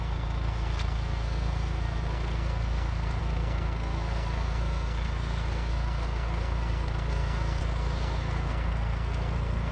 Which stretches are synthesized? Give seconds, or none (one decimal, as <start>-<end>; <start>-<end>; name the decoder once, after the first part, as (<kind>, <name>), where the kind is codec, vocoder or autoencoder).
0.0-9.7 (codec, SNAC)